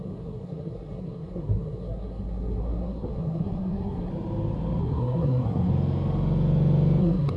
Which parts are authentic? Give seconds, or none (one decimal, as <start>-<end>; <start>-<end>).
4.1-4.8; 5.7-7.0